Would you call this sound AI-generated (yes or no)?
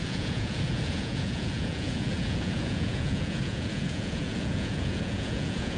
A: yes